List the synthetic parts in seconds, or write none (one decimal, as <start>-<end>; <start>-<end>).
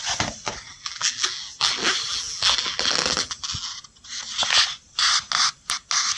0.7-1.7; 2.1-3.7